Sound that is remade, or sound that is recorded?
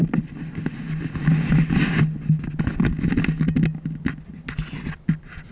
recorded